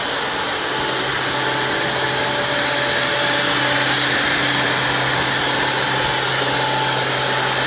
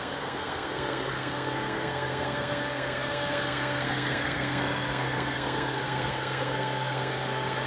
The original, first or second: first